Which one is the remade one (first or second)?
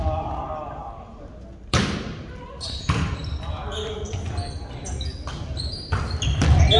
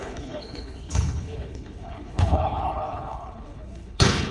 second